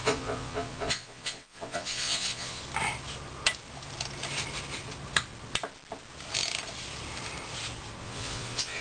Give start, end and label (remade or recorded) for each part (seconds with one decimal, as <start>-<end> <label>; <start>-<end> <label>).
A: 0.0-2.6 remade; 2.6-8.0 recorded; 8.0-8.8 remade